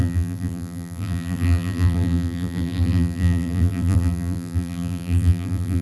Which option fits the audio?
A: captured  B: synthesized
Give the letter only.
B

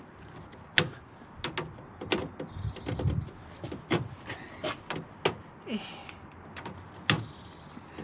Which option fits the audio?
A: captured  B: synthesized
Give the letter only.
A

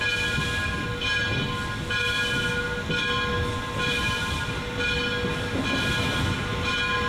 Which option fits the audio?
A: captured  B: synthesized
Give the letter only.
A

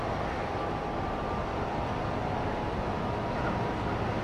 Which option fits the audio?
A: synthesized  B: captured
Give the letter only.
B